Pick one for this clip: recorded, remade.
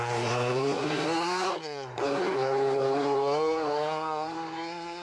remade